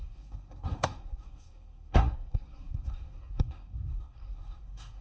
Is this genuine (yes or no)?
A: no